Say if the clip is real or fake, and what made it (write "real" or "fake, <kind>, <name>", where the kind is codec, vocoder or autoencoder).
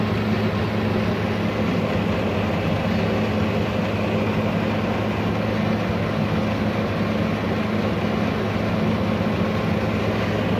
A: real